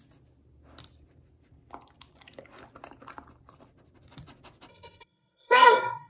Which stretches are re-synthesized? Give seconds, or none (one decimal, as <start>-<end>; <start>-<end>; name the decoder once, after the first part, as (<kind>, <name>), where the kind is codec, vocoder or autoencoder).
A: 4.7-6.1 (codec, SNAC)